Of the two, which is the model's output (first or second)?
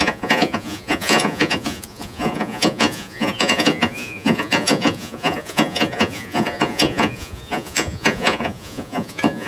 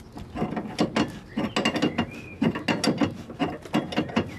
first